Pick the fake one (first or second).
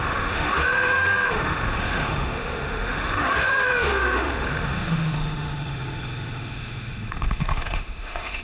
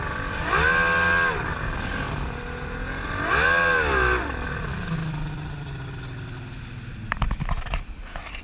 first